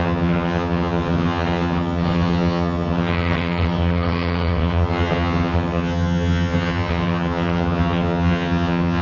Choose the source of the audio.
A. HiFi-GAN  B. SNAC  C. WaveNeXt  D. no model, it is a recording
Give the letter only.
A